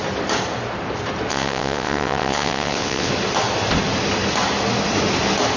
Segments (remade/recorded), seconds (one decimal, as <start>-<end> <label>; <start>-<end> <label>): 0.0-1.3 recorded; 1.3-3.1 remade; 3.1-5.6 recorded